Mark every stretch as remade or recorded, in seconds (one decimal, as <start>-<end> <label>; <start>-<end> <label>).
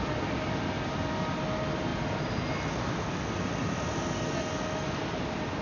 0.0-5.6 recorded